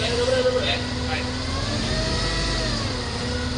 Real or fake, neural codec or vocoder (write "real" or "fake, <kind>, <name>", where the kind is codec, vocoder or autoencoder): real